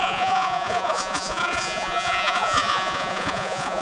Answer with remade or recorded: remade